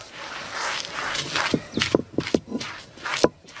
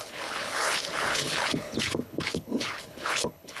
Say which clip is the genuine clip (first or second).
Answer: first